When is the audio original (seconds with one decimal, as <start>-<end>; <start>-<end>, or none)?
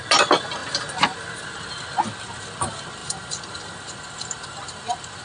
0.0-5.2